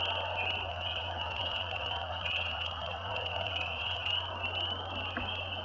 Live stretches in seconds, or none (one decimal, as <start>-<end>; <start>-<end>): 0.0-0.7; 4.1-5.6